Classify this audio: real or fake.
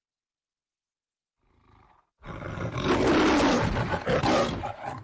real